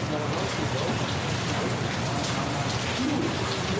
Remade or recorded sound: recorded